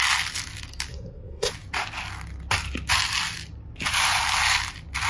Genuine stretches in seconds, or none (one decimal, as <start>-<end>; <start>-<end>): 0.0-0.9; 1.5-5.1